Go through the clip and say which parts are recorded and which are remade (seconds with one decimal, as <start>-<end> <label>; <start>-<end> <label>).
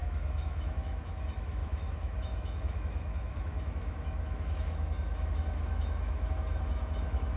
0.0-7.4 remade